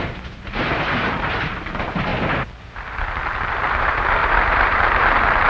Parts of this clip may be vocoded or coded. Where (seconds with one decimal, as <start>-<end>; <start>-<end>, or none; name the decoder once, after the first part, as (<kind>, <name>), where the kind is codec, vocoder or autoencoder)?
0.0-2.1 (vocoder, BigVGAN v2); 3.5-5.5